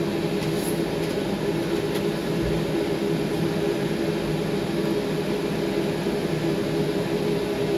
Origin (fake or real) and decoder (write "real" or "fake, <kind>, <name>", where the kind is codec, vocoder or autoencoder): real